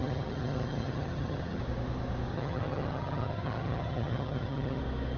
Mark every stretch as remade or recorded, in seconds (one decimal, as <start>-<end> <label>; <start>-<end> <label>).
0.0-1.6 remade; 1.6-2.3 recorded; 2.3-4.8 remade; 4.8-5.2 recorded